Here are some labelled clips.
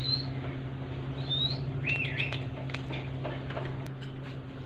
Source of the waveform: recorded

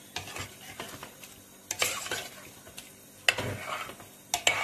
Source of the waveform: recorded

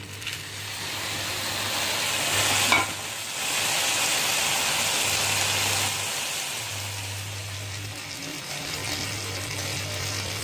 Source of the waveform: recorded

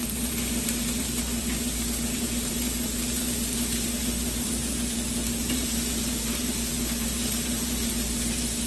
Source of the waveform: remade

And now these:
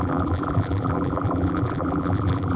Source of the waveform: remade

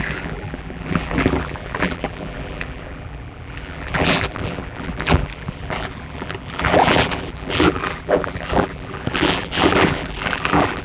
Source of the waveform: remade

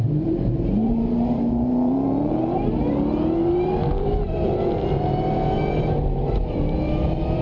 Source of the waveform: remade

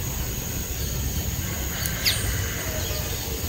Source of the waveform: recorded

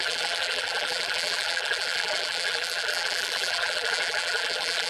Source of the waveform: remade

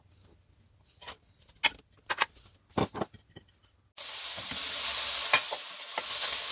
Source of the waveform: recorded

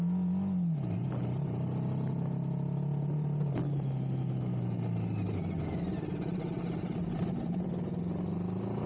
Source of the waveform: recorded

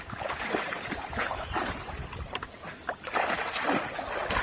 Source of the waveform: remade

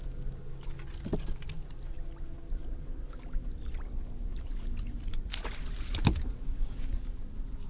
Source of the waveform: recorded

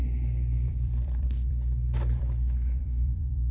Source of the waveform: remade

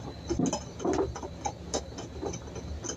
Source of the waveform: recorded